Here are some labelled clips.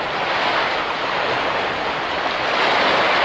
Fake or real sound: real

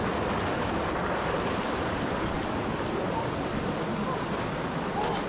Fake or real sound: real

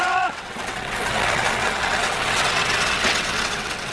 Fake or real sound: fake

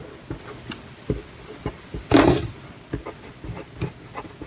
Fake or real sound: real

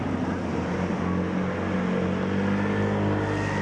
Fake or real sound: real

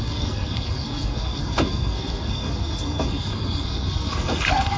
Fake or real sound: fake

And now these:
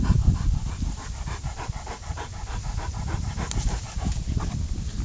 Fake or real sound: fake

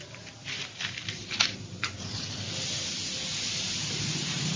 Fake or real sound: real